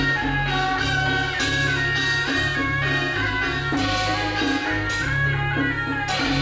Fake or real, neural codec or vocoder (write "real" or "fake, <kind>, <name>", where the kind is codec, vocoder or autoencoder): real